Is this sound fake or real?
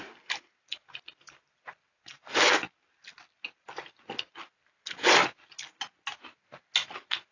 real